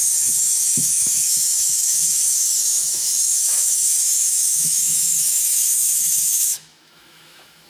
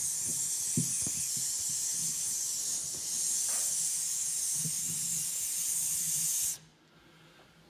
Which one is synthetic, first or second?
first